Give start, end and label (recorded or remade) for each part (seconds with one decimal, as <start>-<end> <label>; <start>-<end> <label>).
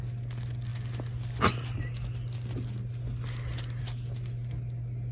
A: 0.0-5.1 recorded